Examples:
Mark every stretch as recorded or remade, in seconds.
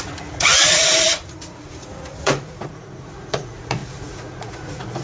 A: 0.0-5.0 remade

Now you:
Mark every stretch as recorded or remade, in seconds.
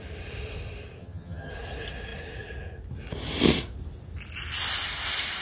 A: 0.0-1.0 recorded; 1.0-1.5 remade; 1.5-5.4 recorded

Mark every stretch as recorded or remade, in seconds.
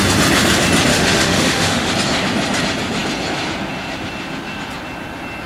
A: 0.0-0.9 recorded; 0.9-1.9 remade; 1.9-5.5 recorded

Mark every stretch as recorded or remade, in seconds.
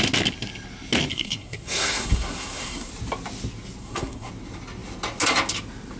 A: 0.0-1.1 recorded; 1.1-2.9 remade; 2.9-3.8 recorded; 3.8-4.3 remade; 4.3-6.0 recorded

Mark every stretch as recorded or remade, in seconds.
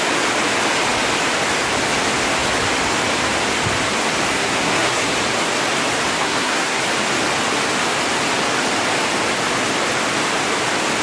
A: 0.0-4.3 recorded; 4.3-5.1 remade; 5.1-6.2 recorded; 6.2-6.8 remade; 6.8-11.0 recorded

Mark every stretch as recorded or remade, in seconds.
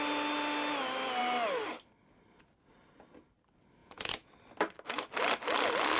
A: 0.0-3.8 recorded; 3.8-4.3 remade; 4.3-6.0 recorded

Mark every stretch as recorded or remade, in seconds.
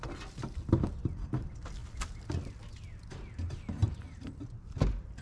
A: 0.0-5.2 recorded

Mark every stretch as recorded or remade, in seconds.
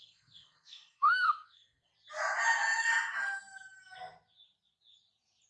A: 0.0-1.9 remade; 1.9-5.5 recorded